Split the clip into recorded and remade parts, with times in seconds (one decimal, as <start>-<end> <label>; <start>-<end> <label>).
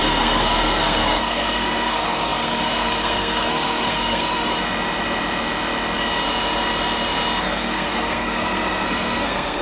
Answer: 0.0-4.5 remade; 4.5-7.4 recorded; 7.4-9.6 remade